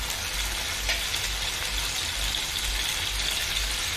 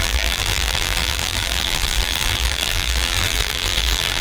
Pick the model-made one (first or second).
second